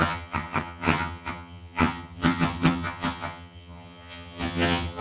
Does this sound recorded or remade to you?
remade